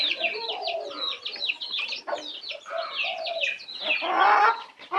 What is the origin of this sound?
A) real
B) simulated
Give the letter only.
A